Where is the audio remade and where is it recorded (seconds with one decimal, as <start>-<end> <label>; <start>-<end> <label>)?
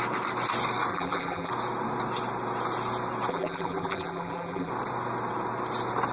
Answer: 0.0-0.9 recorded; 0.9-1.5 remade; 1.5-3.3 recorded; 3.3-4.7 remade; 4.7-6.1 recorded